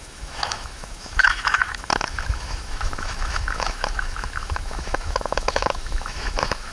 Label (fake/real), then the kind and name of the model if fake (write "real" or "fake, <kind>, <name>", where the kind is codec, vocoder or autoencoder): fake, autoencoder, DAC-VAE